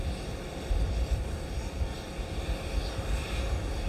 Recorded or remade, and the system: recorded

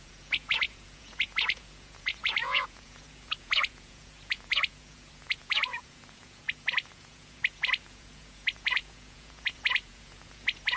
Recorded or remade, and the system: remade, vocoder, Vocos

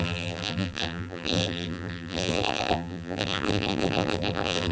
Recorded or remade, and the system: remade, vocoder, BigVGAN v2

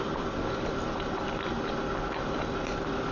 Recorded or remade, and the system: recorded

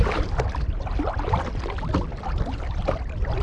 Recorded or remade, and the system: recorded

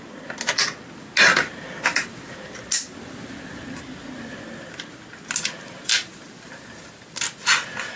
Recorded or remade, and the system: recorded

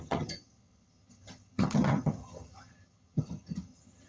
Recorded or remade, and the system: remade, vocoder, HiFi-GAN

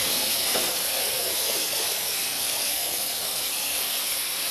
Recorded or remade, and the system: remade, codec, SNAC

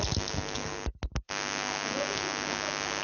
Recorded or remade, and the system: recorded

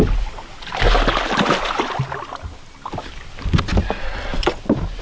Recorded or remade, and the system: recorded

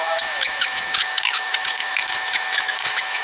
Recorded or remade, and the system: remade, autoencoder, DAC-VAE